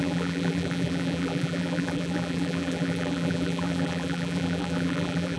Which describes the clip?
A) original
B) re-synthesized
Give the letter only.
B